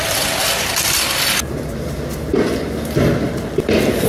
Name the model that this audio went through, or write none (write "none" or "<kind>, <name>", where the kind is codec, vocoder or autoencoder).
none